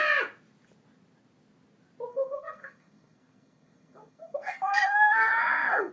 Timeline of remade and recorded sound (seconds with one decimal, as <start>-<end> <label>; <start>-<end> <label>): 0.0-2.1 recorded; 2.1-5.9 remade